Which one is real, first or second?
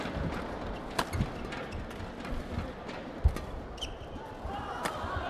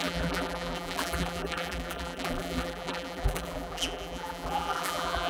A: first